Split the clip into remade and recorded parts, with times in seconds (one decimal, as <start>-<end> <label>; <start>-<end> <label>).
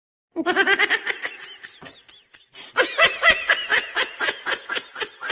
0.0-3.7 recorded; 3.7-4.7 remade; 4.7-5.3 recorded